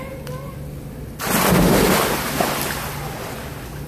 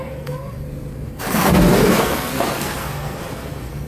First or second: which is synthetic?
second